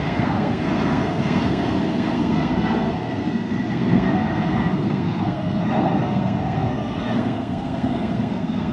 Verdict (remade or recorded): remade